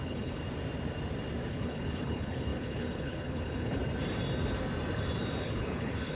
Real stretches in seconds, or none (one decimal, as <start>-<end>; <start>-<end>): 0.4-1.5; 3.8-5.4